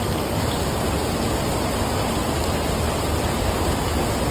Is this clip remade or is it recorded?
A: recorded